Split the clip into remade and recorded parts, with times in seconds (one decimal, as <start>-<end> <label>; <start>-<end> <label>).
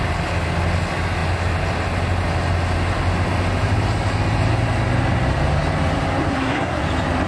0.0-6.3 recorded; 6.3-6.8 remade; 6.8-7.3 recorded